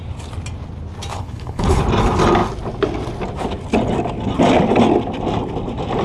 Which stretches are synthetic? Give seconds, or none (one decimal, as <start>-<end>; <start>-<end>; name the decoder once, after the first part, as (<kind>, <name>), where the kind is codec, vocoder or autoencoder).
1.1-1.8 (codec, HILCodec)